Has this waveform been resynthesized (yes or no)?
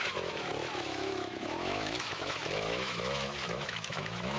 yes